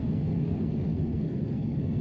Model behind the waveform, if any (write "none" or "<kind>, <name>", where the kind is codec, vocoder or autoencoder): codec, SNAC